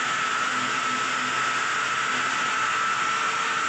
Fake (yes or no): no